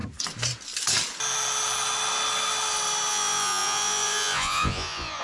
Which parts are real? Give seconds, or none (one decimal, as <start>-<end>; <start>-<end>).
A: 0.0-3.1